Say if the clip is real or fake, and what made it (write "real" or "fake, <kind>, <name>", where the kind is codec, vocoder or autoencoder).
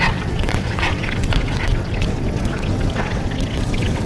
fake, vocoder, WaveNeXt